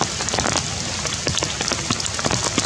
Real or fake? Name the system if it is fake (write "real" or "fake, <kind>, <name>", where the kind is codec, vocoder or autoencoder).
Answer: real